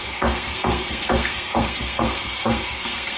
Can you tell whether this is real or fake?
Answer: fake